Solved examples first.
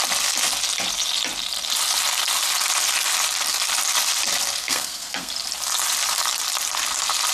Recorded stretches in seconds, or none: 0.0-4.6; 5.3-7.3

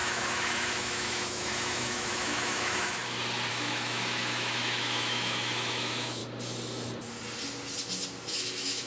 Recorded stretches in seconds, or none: 3.0-3.5; 6.2-8.3

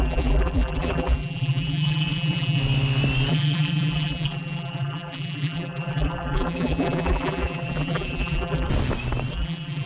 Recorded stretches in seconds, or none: 2.6-3.3; 8.7-9.3

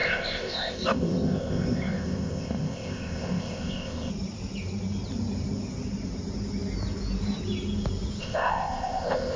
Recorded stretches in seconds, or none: 4.1-8.2

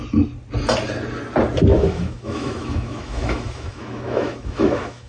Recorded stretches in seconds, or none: 0.0-1.7

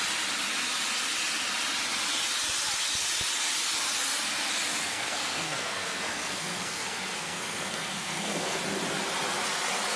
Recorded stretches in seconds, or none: 0.0-4.7; 8.6-10.0